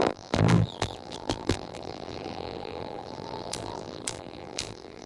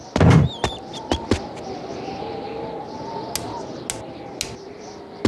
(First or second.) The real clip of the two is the second